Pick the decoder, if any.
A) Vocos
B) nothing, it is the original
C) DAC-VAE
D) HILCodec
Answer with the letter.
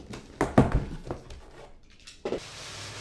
B